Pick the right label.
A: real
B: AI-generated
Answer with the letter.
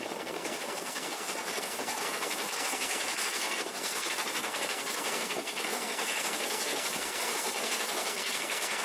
B